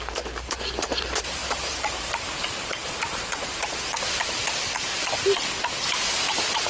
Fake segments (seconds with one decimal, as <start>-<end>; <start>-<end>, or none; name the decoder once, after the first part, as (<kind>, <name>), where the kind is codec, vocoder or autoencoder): 0.0-5.0 (vocoder, BigVGAN v2); 6.1-6.7